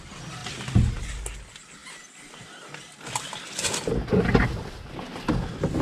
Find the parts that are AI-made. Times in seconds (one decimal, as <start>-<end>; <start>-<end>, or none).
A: none